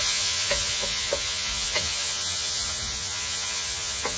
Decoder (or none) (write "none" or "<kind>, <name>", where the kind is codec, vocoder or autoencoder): vocoder, Vocos